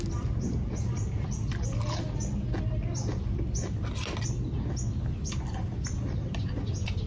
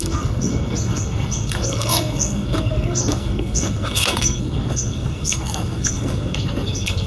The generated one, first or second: second